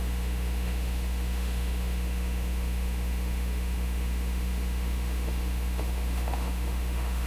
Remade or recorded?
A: remade